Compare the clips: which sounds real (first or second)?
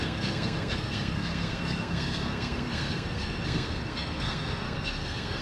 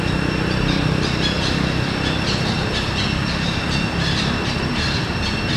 second